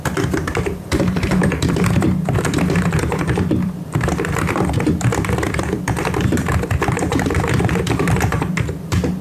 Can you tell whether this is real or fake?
fake